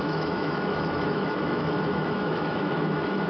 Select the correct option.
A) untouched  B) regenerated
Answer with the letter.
B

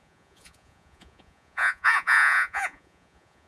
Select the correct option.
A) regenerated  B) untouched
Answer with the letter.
A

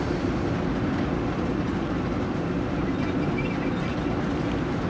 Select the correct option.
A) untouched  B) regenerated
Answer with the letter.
A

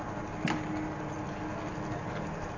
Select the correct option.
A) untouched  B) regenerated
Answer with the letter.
A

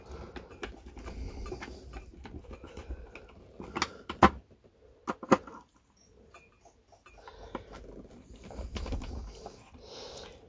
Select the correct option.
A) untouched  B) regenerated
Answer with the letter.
A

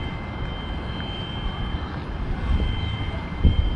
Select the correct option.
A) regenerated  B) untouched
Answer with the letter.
B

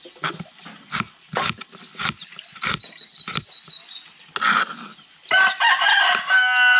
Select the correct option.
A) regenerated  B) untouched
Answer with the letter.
B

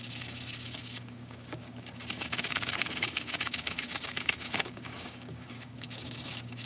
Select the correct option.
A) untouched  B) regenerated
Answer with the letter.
B